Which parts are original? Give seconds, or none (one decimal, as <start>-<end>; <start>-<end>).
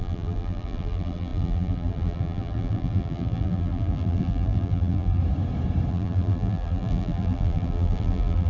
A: 5.2-5.9